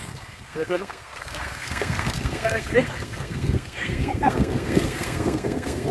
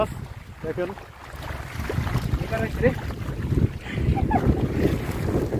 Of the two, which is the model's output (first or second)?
first